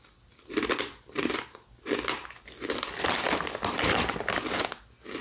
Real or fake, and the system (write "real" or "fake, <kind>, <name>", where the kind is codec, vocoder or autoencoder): real